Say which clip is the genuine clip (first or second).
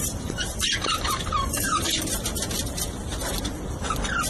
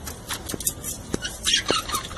second